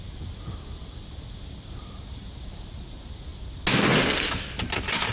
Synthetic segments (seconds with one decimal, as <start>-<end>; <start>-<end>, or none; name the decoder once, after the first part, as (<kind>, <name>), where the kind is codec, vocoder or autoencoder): 0.0-3.3 (vocoder, BigVGAN v2)